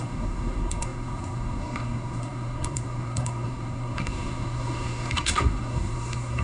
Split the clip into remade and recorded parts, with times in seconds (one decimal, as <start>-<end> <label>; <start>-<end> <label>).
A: 0.0-6.4 remade